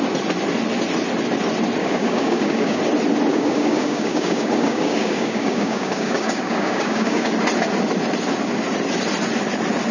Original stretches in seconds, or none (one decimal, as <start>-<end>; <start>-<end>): 0.0-1.8; 2.8-3.3; 7.3-9.9